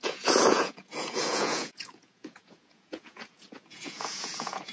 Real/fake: fake